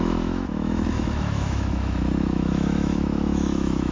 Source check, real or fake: fake